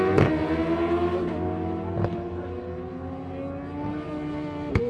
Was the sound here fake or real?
real